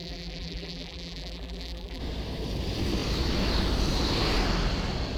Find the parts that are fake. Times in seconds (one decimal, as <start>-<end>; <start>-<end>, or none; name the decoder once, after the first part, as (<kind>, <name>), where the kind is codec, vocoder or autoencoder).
0.0-2.0 (vocoder, BigVGAN v2)